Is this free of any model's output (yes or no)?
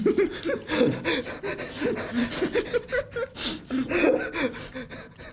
yes